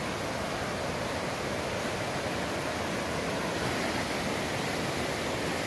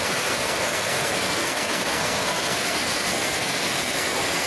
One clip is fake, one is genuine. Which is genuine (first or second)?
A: first